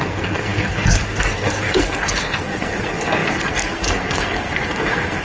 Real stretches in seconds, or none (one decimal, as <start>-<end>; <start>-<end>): none